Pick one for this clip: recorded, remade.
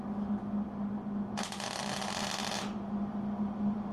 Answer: recorded